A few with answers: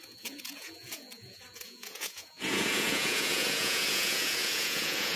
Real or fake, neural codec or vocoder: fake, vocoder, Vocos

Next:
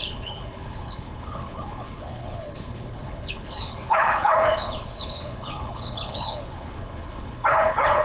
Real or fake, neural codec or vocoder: fake, codec, HILCodec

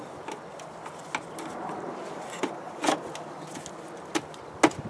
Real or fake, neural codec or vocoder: real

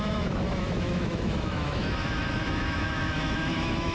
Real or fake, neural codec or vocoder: fake, autoencoder, DAC-VAE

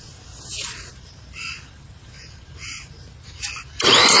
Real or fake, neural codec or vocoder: fake, vocoder, BigVGAN v2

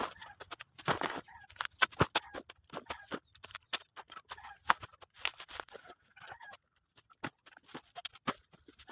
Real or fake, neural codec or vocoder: real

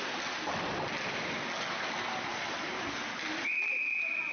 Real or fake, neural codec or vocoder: real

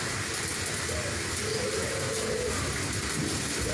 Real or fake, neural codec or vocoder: real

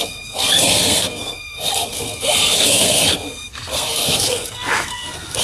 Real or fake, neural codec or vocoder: fake, codec, SNAC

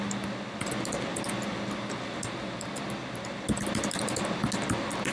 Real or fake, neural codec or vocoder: real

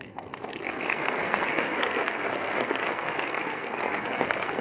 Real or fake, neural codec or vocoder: fake, codec, SNAC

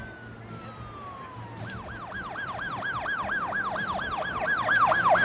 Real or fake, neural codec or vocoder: real